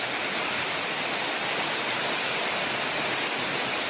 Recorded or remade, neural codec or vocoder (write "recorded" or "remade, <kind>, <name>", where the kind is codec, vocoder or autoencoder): recorded